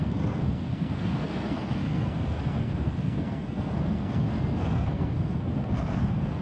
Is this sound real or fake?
fake